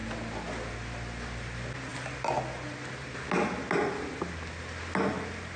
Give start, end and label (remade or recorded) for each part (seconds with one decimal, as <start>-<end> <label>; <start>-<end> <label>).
0.0-5.6 recorded